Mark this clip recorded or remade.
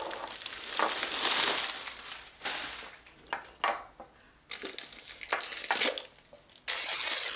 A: recorded